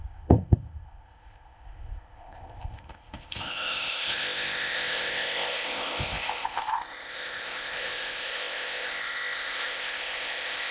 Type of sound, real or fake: fake